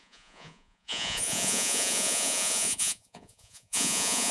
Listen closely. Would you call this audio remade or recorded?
remade